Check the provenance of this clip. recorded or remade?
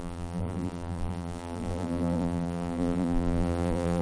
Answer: remade